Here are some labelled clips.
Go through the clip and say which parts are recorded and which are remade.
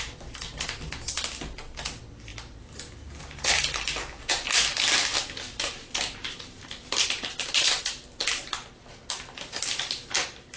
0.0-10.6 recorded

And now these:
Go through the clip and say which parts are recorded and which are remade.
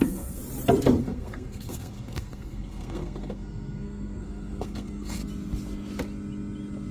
0.0-0.4 remade; 0.4-1.0 recorded; 1.0-5.2 remade; 5.2-6.9 recorded